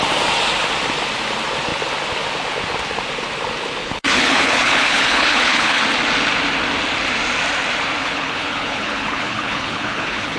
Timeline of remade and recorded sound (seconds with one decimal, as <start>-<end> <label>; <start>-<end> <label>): 0.0-3.8 recorded; 3.8-5.8 remade; 5.8-8.0 recorded; 8.0-10.4 remade